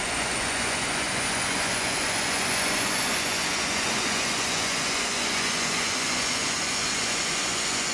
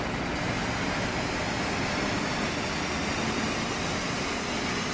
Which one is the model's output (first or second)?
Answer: first